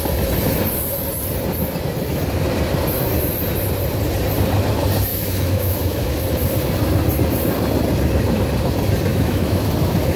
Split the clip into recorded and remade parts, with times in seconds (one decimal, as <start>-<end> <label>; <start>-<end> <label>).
0.0-5.1 recorded; 5.1-6.1 remade; 6.1-9.1 recorded; 9.1-9.7 remade; 9.7-10.2 recorded